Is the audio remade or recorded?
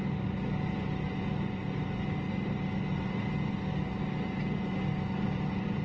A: recorded